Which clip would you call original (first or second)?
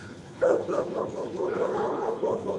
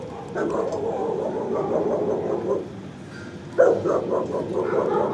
second